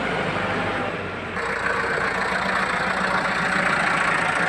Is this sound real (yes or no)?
yes